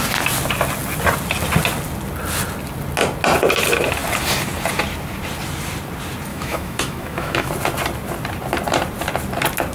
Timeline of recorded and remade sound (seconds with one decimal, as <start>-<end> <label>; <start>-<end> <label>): 0.0-6.3 recorded; 6.3-7.5 remade; 7.5-9.7 recorded

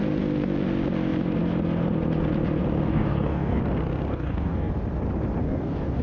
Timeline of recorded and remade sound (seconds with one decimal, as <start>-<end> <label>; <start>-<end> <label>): 0.0-2.9 recorded; 2.9-3.6 remade; 3.6-4.1 recorded; 4.1-4.7 remade; 4.7-5.4 recorded; 5.4-6.0 remade

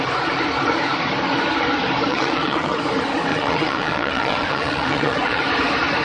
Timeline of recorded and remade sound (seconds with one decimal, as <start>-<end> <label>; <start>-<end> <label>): 0.0-2.1 recorded; 2.1-2.8 remade; 2.8-3.3 recorded; 3.3-5.4 remade; 5.4-6.0 recorded